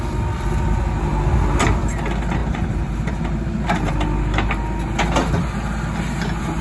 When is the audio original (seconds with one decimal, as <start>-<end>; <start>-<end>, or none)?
0.0-2.4; 3.9-6.6